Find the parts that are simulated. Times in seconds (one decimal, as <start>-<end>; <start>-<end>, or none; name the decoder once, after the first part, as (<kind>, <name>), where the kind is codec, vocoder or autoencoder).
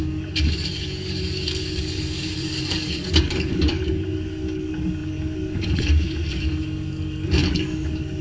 0.0-8.2 (codec, DAC)